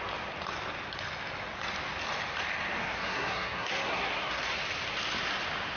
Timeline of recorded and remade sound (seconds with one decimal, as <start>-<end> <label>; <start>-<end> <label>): 0.0-2.8 recorded; 2.8-4.4 remade; 4.4-5.8 recorded